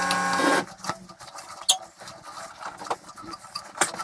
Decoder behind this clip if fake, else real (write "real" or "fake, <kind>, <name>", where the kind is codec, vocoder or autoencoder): real